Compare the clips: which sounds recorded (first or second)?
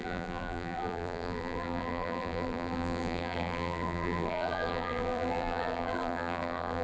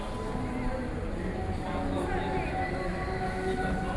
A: second